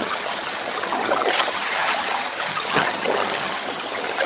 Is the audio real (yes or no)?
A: no